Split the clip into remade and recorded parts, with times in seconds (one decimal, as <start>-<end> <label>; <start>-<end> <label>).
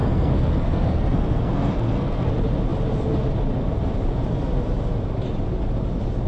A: 0.0-2.3 remade; 2.3-6.3 recorded